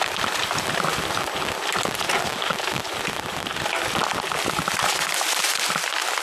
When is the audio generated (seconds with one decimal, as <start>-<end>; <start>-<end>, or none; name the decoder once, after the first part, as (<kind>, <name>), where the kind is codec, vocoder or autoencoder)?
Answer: none